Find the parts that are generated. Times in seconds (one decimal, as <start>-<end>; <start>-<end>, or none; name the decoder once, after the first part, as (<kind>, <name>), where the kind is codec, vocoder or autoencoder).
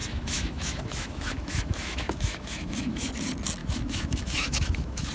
0.0-3.1 (autoencoder, DAC-VAE); 3.6-5.1